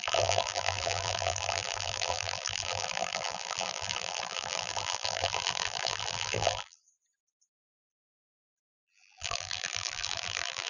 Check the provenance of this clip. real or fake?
fake